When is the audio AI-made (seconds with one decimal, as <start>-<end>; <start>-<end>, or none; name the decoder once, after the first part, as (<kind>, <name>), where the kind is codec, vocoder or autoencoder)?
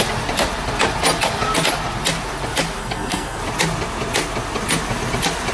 2.8-3.4 (codec, SNAC)